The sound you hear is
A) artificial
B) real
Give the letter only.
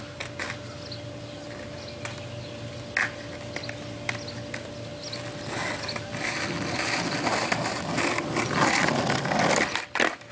B